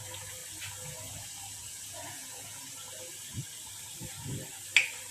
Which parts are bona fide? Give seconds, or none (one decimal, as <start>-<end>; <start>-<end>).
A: 0.0-1.6; 2.6-5.1